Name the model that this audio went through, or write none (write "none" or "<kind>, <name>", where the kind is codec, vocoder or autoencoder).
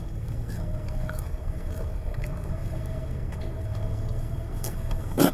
codec, SNAC